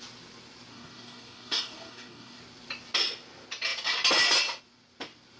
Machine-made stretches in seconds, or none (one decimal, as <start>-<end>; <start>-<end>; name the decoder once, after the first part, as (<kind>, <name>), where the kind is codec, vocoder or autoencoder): 0.7-2.4 (codec, DAC)